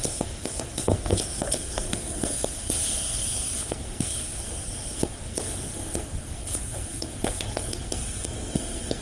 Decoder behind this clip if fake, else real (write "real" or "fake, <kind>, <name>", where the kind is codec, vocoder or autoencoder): fake, codec, SNAC